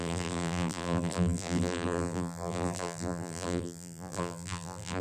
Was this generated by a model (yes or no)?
yes